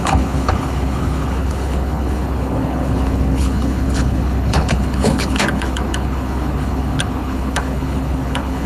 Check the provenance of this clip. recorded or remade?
remade